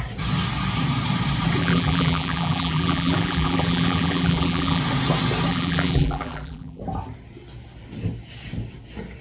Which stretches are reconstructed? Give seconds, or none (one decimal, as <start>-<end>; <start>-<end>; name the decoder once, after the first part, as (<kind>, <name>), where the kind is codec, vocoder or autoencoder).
1.6-4.8 (vocoder, BigVGAN v2); 5.5-6.8